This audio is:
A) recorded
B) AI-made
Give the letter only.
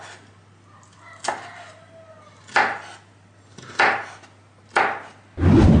A